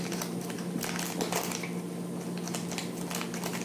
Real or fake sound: real